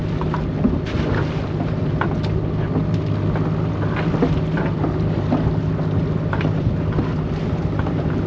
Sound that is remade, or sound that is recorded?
recorded